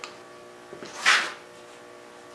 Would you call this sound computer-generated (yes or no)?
no